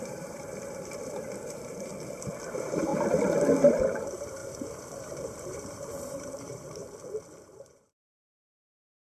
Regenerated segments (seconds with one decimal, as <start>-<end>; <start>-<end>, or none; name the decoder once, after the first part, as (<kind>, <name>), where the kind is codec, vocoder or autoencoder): 0.0-1.9 (vocoder, BigVGAN v2); 2.5-2.9; 3.7-6.8; 7.4-9.2